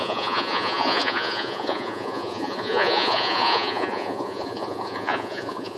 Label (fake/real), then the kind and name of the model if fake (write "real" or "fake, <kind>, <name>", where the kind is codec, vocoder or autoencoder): fake, vocoder, Vocos